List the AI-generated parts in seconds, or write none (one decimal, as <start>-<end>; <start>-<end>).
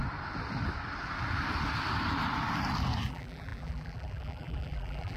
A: 3.1-5.2